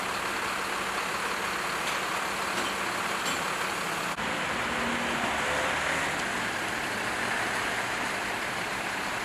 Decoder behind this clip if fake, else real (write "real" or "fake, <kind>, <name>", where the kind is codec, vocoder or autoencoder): real